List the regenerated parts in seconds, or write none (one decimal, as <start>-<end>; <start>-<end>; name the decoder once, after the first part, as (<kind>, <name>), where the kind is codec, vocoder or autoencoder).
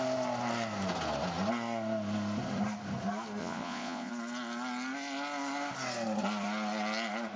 3.4-4.1 (vocoder, Vocos)